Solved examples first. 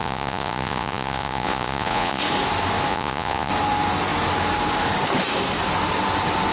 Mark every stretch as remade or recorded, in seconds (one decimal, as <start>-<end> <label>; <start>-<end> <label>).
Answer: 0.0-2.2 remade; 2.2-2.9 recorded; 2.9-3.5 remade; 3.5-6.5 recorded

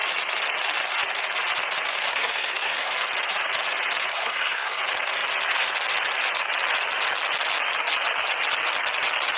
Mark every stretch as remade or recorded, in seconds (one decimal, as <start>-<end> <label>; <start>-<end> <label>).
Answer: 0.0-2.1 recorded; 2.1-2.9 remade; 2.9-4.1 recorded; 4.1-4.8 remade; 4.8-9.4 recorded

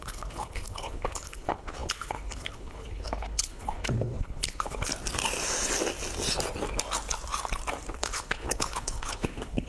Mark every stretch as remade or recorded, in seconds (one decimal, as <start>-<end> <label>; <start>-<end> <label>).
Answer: 0.0-4.9 remade; 4.9-7.9 recorded; 7.9-9.7 remade

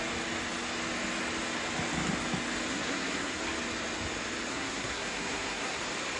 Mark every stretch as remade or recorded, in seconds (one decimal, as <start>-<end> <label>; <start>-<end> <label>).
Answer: 0.0-2.7 recorded; 2.7-3.4 remade; 3.4-4.5 recorded; 4.5-5.8 remade; 5.8-6.2 recorded